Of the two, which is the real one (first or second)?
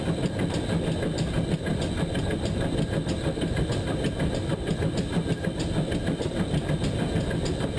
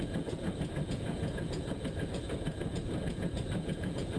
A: first